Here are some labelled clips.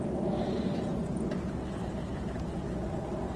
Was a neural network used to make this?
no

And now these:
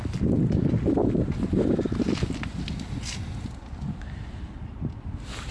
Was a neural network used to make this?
no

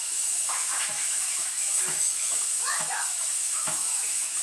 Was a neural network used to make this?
yes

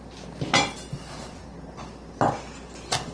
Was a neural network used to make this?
no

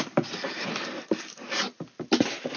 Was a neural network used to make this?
no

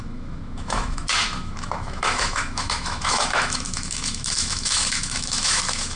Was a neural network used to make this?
yes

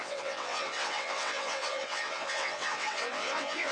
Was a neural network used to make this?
yes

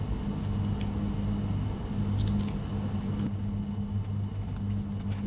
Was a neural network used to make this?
no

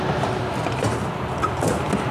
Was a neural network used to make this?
no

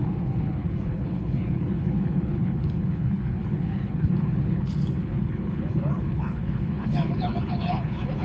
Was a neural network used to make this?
yes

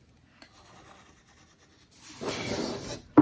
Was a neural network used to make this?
no